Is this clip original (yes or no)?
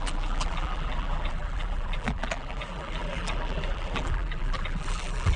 no